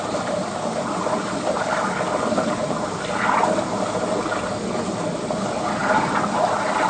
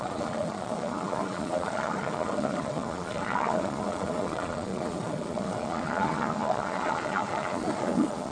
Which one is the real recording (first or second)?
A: first